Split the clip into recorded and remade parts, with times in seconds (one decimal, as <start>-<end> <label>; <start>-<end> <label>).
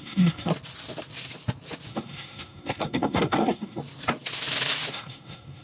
0.0-0.5 remade; 0.5-1.9 recorded; 1.9-3.8 remade; 3.8-4.9 recorded; 4.9-5.6 remade